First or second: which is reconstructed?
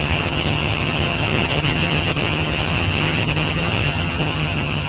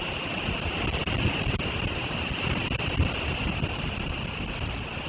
first